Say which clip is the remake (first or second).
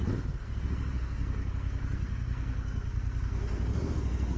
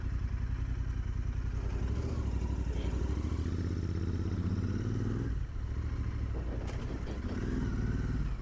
first